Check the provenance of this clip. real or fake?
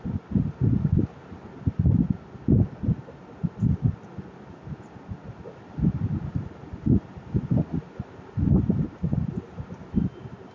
real